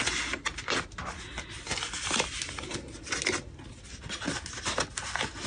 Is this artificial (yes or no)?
no